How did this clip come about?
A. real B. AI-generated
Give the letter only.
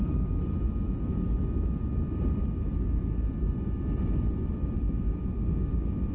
B